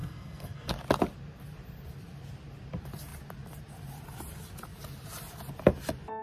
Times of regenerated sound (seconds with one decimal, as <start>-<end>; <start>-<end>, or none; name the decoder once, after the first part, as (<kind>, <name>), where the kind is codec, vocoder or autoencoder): 0.0-0.7 (codec, SNAC)